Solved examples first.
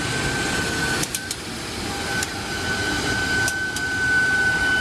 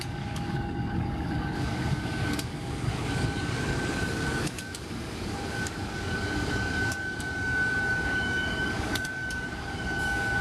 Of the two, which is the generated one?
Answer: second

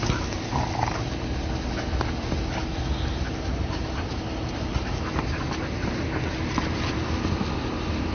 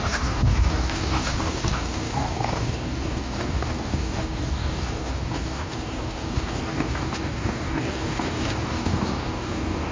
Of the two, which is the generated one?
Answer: second